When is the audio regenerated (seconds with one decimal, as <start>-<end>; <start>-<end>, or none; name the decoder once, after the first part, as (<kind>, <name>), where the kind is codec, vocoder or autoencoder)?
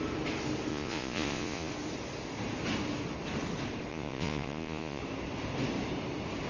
0.7-1.7 (vocoder, Vocos); 3.9-5.0